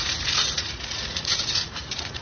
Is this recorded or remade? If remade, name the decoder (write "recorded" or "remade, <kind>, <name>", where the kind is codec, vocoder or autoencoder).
remade, vocoder, Vocos